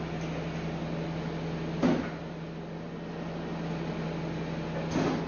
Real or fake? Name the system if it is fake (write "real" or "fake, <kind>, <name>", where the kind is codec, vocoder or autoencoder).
real